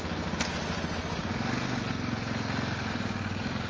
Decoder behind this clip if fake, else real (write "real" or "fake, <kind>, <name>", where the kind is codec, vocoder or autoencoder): real